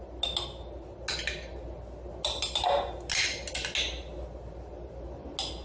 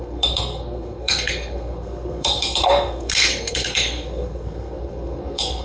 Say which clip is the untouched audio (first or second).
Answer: first